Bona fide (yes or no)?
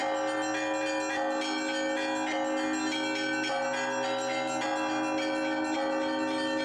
yes